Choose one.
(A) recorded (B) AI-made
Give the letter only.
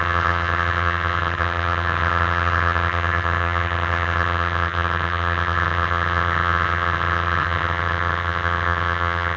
B